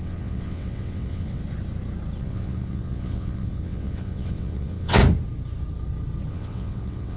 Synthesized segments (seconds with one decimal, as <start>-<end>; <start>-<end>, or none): 0.0-1.4; 2.2-5.0; 6.3-7.2